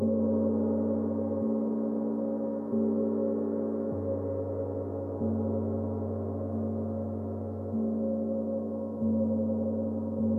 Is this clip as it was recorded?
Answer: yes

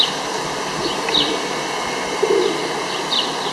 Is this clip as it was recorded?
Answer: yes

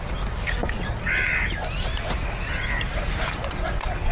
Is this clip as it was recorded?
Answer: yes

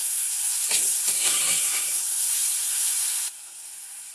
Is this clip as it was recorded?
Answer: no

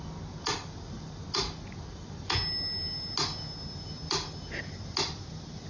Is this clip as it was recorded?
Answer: yes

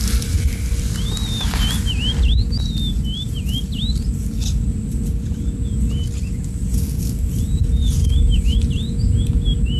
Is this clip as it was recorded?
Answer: yes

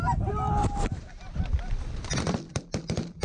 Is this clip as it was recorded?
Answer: no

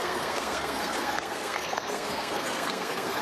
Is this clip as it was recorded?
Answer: no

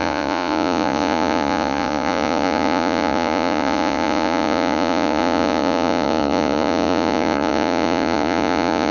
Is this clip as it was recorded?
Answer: no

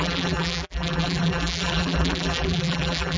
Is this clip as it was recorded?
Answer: no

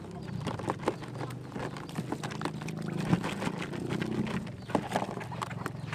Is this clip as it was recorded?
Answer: yes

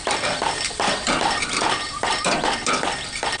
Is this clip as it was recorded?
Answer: yes